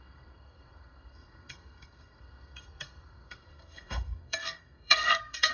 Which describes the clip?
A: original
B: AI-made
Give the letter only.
B